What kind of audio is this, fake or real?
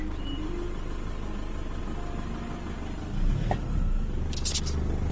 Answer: real